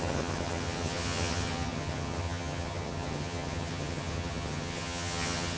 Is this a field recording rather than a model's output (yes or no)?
no